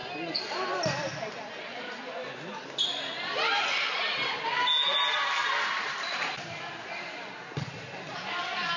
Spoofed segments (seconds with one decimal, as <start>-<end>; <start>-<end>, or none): 0.0-1.5; 5.2-6.7